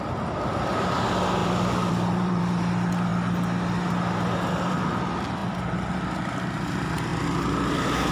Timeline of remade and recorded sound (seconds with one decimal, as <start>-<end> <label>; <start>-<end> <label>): 0.0-1.4 recorded; 1.4-2.4 remade; 2.4-7.1 recorded; 7.1-8.1 remade